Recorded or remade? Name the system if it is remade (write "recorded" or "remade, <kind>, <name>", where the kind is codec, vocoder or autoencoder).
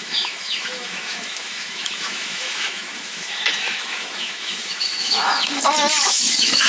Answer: remade, autoencoder, DAC-VAE